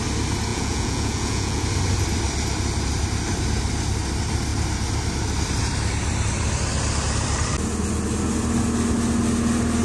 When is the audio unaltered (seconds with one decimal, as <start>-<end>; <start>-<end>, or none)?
0.0-0.5; 1.6-9.8